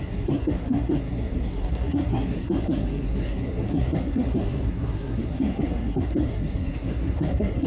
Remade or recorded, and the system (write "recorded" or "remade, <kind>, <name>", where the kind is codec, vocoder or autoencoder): remade, codec, SNAC